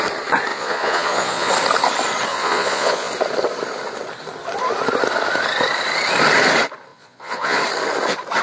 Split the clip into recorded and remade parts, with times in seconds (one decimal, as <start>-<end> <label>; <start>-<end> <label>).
0.0-0.5 recorded; 0.5-1.5 remade; 1.5-2.3 recorded; 2.3-3.1 remade; 3.1-6.9 recorded; 6.9-7.6 remade; 7.6-8.4 recorded